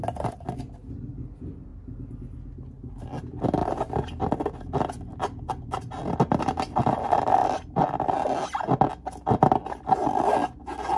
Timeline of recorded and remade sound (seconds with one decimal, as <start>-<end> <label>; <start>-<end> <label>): 0.0-11.0 recorded